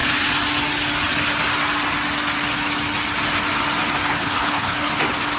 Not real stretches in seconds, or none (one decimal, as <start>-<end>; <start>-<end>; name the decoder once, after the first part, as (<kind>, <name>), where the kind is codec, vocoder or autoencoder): 4.1-4.9 (codec, HILCodec)